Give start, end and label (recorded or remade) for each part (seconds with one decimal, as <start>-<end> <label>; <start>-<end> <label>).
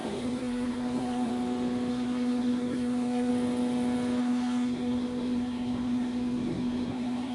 0.0-1.3 remade; 1.3-1.9 recorded; 1.9-3.3 remade; 3.3-4.2 recorded; 4.2-7.3 remade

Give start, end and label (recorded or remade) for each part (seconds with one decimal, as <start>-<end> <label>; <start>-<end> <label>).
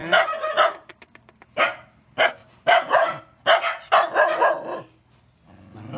0.0-2.0 remade; 2.0-2.4 recorded; 2.4-3.2 remade; 3.2-6.0 recorded